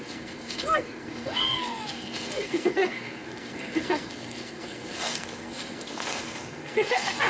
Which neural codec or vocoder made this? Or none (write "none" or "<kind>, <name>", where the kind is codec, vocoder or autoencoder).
codec, SNAC